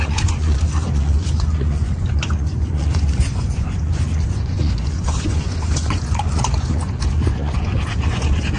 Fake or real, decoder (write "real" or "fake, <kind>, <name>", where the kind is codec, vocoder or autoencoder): fake, vocoder, Vocos